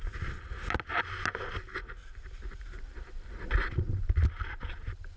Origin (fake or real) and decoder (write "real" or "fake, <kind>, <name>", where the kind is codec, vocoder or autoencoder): real